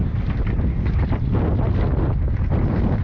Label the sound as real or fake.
real